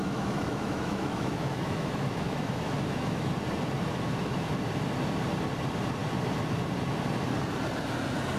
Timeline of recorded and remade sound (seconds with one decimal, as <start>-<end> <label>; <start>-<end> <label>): 0.0-3.3 remade; 3.3-3.9 recorded; 3.9-4.4 remade; 4.4-8.4 recorded